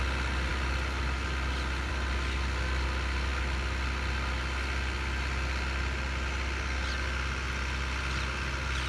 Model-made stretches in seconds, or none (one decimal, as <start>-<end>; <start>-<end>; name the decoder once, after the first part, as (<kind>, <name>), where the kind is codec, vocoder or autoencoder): none